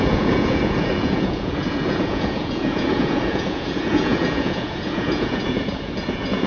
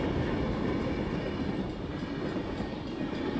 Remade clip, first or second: first